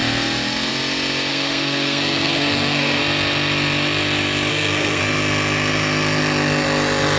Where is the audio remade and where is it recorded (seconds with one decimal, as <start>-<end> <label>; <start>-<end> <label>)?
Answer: 0.0-1.3 recorded; 1.3-3.0 remade; 3.0-4.5 recorded; 4.5-5.0 remade; 5.0-7.2 recorded